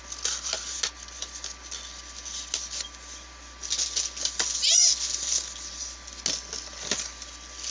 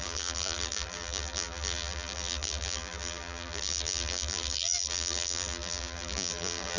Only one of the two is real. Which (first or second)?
first